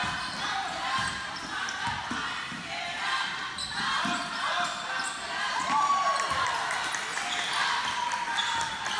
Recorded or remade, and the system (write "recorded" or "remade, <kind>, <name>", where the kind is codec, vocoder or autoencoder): recorded